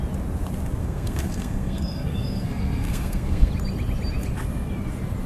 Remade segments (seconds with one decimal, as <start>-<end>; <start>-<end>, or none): 0.8-3.5